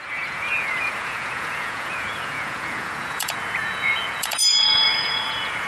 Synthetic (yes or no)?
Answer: yes